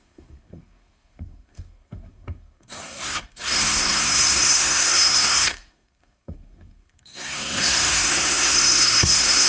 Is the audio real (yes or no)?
no